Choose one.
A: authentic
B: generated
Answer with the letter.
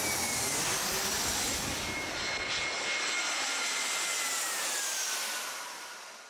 A